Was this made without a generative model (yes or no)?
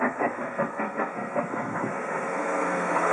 no